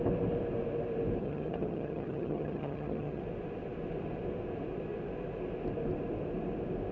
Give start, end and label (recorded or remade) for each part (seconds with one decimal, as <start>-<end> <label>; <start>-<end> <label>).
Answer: 0.0-1.2 recorded; 1.2-3.2 remade; 3.2-6.9 recorded